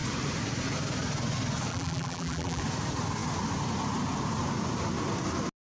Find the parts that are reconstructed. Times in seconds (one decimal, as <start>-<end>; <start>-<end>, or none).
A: 1.7-2.6